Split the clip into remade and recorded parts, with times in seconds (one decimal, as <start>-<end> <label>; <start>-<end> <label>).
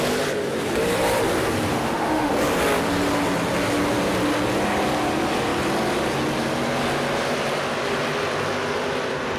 0.0-1.7 recorded; 1.7-2.3 remade; 2.3-9.4 recorded